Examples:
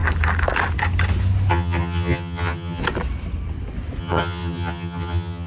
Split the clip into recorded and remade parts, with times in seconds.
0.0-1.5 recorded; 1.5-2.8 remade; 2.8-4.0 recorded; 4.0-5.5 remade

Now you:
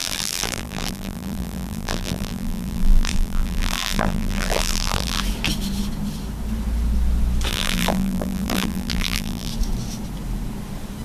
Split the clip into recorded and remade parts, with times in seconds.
0.0-5.2 remade; 5.2-7.5 recorded; 7.5-9.5 remade; 9.5-11.0 recorded

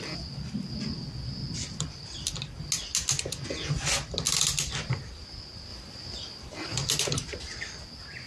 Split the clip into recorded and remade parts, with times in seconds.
0.0-8.3 recorded

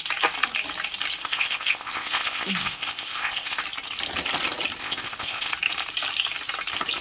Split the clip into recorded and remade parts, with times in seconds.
0.0-1.2 recorded; 1.2-3.6 remade; 3.6-4.8 recorded; 4.8-5.5 remade; 5.5-7.0 recorded

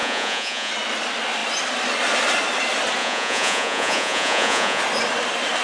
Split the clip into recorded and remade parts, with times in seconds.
0.0-0.7 remade; 0.7-3.0 recorded; 3.0-4.8 remade; 4.8-5.6 recorded

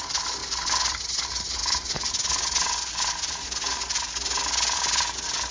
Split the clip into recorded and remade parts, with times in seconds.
0.0-5.5 recorded

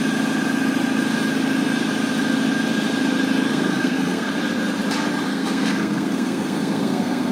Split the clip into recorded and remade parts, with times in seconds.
0.0-3.5 recorded; 3.5-4.3 remade; 4.3-5.3 recorded; 5.3-7.3 remade